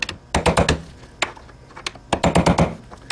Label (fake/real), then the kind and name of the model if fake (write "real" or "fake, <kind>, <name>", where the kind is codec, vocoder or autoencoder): real